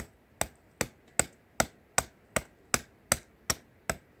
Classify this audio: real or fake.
real